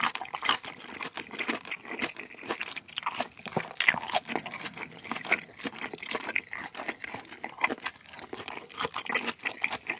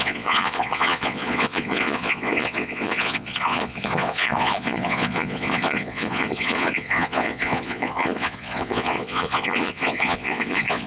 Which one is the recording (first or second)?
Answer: first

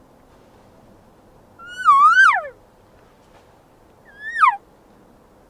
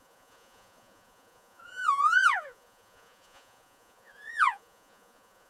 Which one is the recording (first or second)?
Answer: first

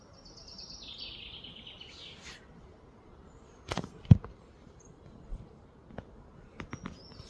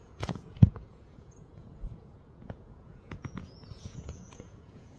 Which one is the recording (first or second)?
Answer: first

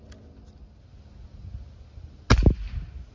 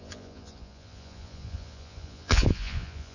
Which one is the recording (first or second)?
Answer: first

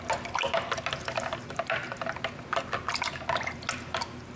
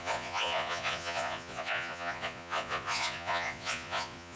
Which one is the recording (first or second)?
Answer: first